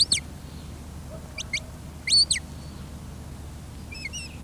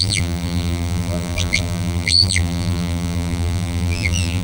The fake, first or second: second